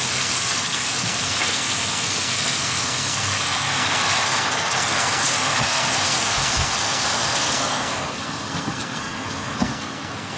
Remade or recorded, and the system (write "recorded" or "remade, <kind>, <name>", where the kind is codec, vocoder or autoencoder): remade, codec, SNAC